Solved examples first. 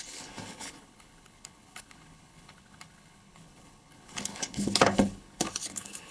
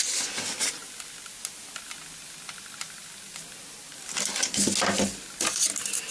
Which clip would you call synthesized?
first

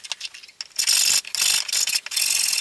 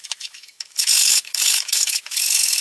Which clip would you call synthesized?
second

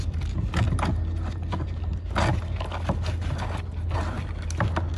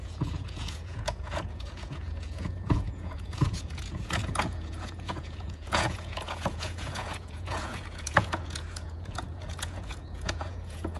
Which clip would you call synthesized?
second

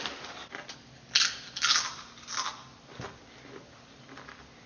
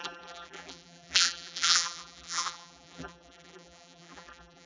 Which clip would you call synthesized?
second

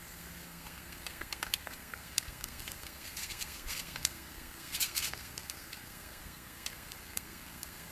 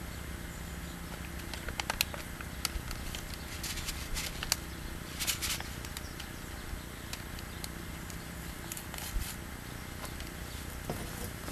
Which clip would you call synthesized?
first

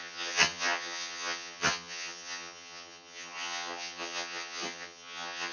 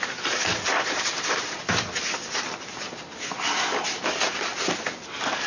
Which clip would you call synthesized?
first